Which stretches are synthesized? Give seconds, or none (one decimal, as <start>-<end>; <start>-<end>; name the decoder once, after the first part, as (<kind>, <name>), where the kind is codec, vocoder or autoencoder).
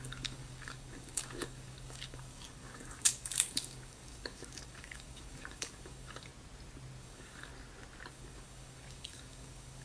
0.0-6.3 (codec, DAC); 7.0-7.5; 8.1-9.8